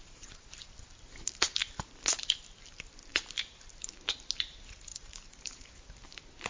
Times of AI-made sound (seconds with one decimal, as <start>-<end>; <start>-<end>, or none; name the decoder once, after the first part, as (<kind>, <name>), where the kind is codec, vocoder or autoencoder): 3.1-3.7 (vocoder, BigVGAN v2); 4.9-5.7